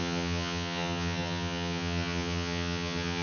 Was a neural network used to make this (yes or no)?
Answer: yes